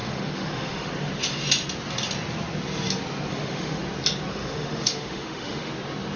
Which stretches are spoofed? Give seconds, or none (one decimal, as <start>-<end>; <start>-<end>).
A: 0.0-0.9; 3.3-3.8; 4.3-5.7